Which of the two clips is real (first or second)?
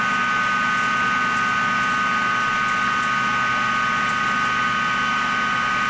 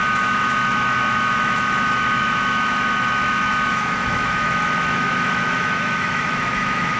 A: first